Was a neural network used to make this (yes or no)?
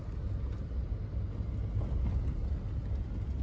no